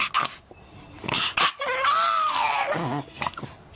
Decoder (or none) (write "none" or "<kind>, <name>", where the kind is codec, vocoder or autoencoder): none